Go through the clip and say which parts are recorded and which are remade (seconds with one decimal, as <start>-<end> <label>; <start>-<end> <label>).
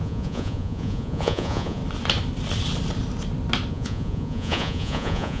0.0-1.8 remade; 1.8-3.7 recorded; 3.7-5.4 remade